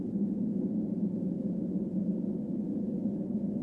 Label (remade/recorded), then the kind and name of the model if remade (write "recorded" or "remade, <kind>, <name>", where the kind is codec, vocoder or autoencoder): recorded